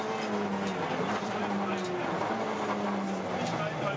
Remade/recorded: recorded